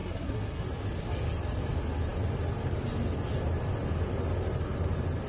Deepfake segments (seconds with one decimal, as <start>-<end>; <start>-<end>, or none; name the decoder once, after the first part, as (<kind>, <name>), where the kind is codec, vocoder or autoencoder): 0.0-0.6 (codec, SNAC)